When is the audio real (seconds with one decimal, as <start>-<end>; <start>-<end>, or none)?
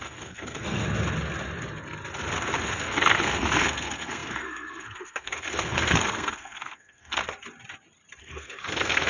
0.8-2.6; 7.2-8.2